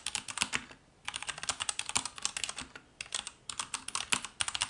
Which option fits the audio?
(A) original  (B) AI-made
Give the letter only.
A